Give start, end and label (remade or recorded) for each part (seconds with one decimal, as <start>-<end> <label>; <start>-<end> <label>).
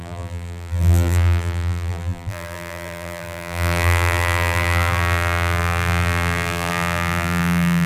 0.0-7.9 remade